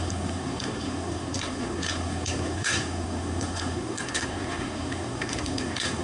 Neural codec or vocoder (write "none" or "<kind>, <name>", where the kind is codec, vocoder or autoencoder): codec, SNAC